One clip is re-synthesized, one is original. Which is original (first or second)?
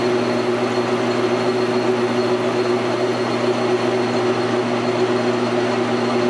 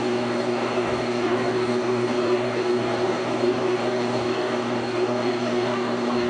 first